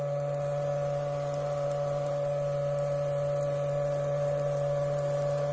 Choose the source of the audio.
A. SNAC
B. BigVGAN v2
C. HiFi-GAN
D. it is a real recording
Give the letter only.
D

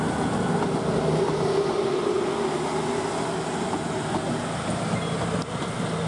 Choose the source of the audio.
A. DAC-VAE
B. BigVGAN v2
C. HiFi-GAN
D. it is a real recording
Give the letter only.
D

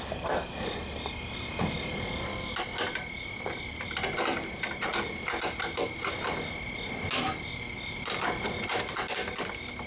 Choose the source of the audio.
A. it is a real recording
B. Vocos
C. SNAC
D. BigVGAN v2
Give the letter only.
A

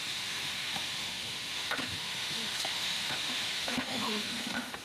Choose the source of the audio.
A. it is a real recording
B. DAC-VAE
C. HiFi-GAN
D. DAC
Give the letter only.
B